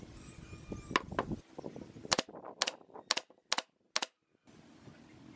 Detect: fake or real real